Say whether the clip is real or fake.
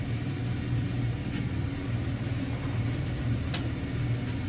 real